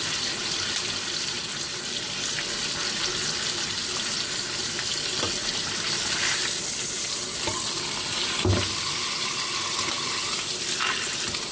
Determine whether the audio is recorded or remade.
recorded